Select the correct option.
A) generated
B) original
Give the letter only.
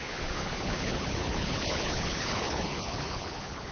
A